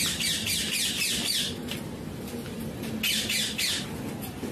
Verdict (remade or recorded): recorded